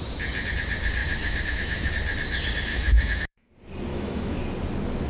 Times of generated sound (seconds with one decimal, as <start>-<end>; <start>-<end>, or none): 1.0-1.9; 2.7-3.5; 3.9-4.4